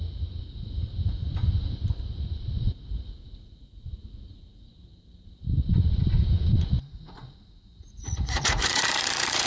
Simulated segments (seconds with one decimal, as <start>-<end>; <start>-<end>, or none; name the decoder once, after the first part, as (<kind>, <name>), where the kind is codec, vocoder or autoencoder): 0.0-4.7 (vocoder, Vocos); 5.7-9.5